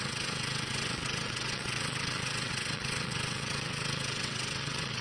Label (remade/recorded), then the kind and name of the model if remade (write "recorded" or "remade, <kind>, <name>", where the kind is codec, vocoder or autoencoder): remade, vocoder, WaveNeXt